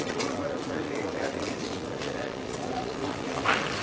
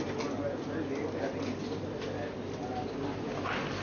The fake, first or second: first